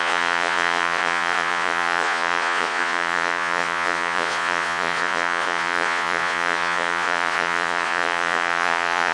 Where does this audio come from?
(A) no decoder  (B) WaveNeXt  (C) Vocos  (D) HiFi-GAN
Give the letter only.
C